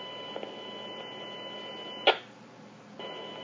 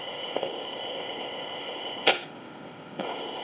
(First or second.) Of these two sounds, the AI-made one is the second